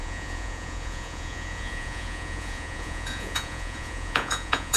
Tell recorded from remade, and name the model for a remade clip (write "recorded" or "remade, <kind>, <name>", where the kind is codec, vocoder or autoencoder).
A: remade, vocoder, Vocos